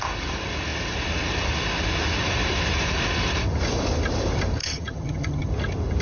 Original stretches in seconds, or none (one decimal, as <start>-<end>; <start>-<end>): 0.0-4.6; 5.5-6.0